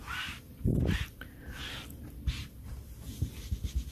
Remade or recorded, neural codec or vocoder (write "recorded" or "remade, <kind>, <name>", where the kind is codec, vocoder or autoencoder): recorded